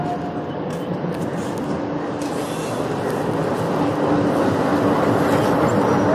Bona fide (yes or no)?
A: yes